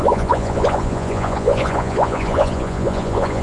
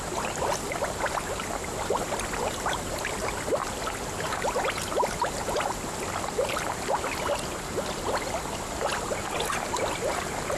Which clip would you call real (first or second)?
second